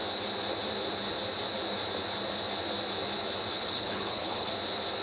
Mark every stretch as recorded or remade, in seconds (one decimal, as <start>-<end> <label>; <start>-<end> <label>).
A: 0.0-3.5 recorded; 3.5-4.5 remade; 4.5-5.0 recorded